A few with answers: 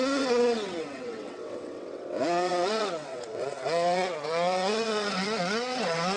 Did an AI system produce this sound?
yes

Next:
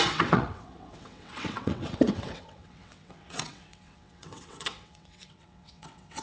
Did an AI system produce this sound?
yes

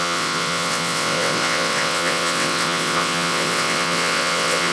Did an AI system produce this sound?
yes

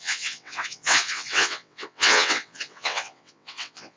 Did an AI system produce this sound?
yes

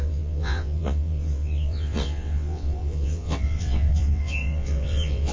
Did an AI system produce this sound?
yes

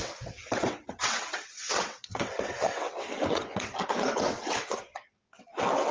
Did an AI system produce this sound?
yes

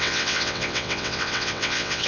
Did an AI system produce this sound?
yes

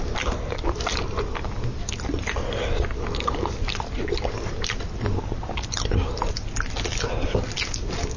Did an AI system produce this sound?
no